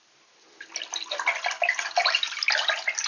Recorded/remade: recorded